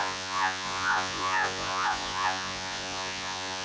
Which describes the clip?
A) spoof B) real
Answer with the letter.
A